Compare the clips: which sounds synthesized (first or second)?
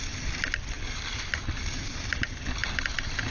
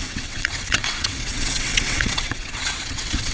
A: second